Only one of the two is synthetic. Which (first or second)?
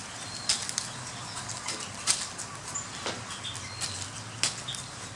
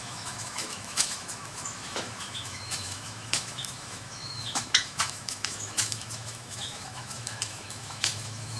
second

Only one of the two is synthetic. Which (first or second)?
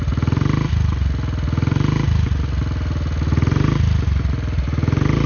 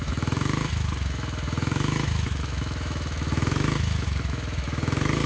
second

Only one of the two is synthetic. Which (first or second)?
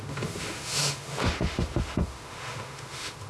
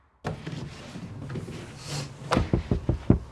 first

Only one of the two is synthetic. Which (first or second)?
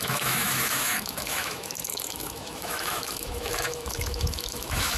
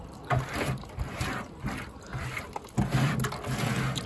first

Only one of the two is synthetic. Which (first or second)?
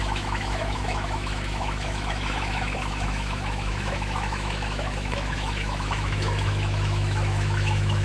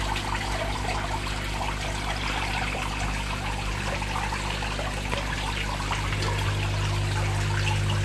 first